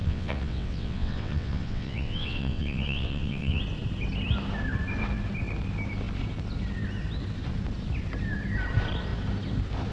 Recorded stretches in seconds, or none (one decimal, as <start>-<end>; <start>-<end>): 3.6-9.9